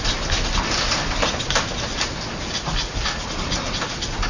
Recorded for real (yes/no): yes